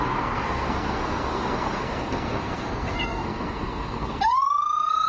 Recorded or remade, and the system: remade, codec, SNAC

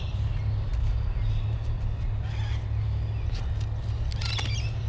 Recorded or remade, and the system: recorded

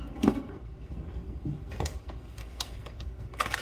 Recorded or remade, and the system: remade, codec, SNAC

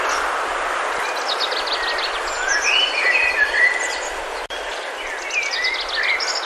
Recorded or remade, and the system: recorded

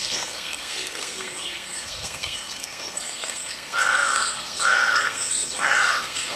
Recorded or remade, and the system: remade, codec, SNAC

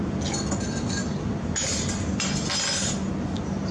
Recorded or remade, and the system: recorded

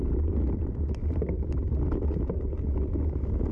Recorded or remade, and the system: recorded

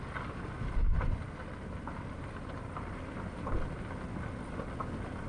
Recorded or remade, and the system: recorded